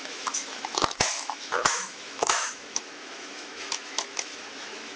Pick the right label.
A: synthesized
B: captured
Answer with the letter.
A